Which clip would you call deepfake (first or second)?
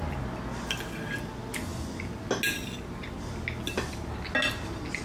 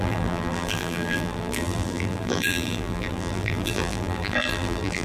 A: second